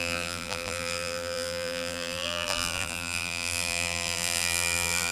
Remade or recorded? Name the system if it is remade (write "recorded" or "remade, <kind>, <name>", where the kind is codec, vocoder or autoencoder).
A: remade, vocoder, BigVGAN v2